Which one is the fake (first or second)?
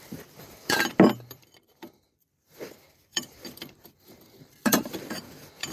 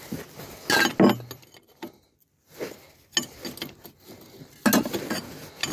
first